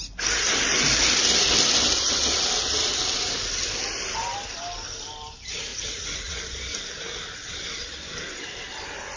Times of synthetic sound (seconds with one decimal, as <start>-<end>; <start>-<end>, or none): 5.7-6.4